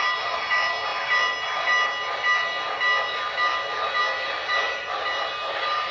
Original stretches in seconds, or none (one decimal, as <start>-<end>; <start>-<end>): 0.0-5.9